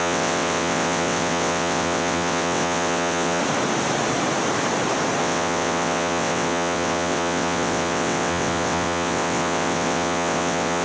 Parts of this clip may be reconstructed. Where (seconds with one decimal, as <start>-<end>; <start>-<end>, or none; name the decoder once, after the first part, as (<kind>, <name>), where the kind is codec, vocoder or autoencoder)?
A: 0.0-3.4 (vocoder, WaveNeXt); 5.2-10.8